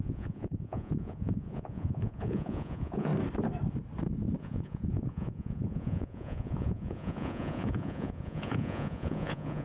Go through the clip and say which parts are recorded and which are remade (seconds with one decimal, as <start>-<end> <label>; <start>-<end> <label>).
0.0-3.1 remade; 3.1-4.4 recorded; 4.4-9.6 remade